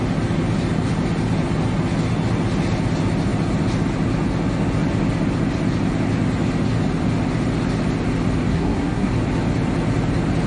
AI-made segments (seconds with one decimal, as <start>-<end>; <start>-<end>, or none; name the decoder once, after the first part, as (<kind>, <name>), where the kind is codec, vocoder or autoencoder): 8.5-9.1 (codec, SNAC)